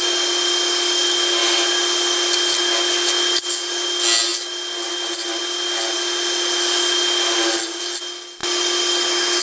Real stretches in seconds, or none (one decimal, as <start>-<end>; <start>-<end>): 0.0-9.4